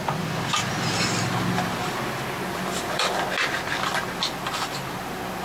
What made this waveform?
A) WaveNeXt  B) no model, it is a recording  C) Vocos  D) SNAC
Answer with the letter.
B